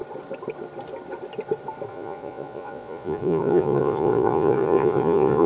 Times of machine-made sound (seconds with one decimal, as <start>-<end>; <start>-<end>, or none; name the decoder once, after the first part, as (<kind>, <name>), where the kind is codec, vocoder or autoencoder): 1.9-5.5 (vocoder, Vocos)